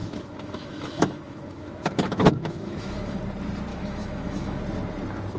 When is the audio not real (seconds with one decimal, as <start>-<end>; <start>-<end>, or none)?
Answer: 0.0-3.2; 3.7-4.6